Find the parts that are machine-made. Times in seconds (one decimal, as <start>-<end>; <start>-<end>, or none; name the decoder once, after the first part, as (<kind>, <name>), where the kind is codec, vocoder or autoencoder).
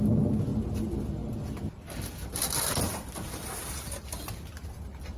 none